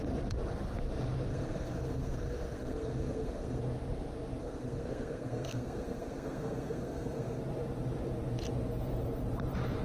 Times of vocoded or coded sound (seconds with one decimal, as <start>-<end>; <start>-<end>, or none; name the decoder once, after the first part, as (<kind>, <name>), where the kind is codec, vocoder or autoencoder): 1.3-3.6 (codec, SNAC); 4.4-7.4